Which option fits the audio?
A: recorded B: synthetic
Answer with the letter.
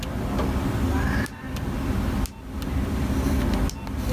A